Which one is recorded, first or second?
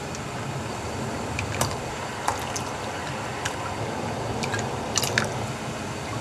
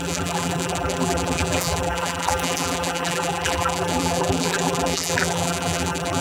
first